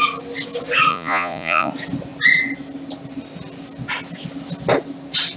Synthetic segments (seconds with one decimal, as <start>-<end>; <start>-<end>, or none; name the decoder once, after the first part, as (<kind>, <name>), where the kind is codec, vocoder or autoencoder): 0.9-1.7 (vocoder, Vocos)